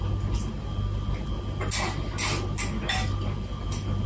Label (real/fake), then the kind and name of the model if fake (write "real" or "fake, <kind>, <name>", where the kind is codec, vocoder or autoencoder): real